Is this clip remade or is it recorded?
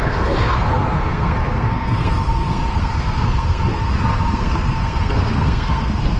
remade